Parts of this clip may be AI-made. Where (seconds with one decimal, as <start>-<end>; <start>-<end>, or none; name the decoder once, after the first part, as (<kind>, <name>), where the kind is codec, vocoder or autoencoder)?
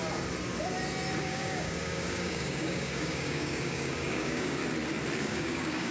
1.2-4.6 (codec, DAC); 5.2-5.9